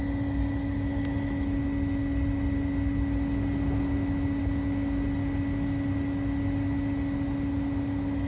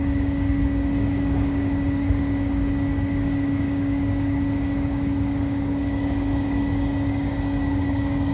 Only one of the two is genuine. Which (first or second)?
first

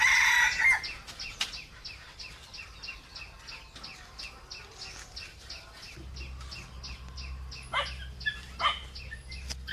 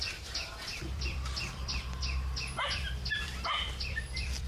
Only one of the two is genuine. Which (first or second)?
first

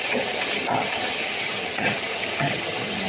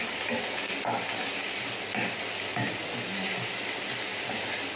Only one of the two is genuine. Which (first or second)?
second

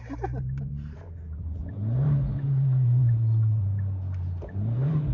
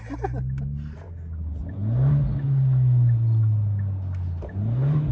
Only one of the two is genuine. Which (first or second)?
second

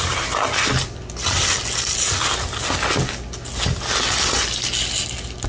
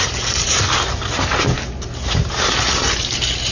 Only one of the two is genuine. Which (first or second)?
first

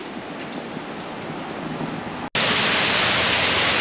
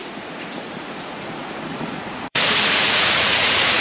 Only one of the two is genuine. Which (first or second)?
first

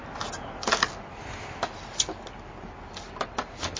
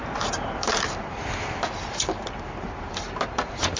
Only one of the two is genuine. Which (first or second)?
first